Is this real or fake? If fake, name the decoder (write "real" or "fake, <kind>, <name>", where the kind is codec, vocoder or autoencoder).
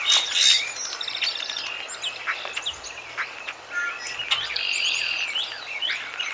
real